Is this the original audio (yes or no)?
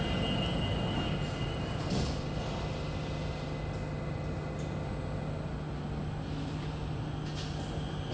yes